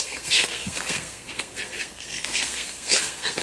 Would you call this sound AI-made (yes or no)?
yes